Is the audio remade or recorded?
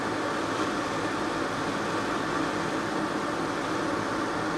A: recorded